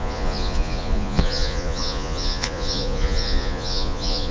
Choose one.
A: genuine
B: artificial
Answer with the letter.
B